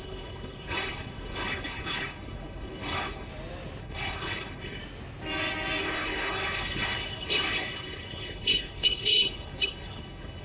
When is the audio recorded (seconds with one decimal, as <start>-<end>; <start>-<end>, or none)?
3.3-3.8; 4.8-5.8